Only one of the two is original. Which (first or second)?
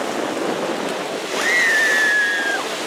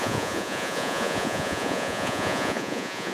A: first